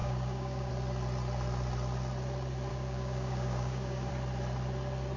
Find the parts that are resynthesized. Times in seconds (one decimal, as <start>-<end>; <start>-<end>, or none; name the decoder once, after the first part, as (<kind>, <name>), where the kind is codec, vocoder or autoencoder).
0.0-0.7 (codec, DAC); 2.7-4.1